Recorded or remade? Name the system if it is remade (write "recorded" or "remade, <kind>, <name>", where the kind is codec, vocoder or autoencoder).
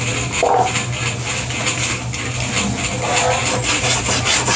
recorded